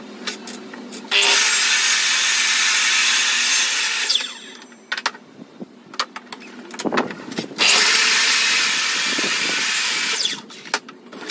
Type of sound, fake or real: real